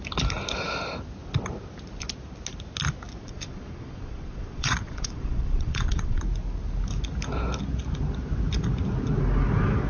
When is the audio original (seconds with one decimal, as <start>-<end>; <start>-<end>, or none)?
0.0-3.2; 6.2-9.9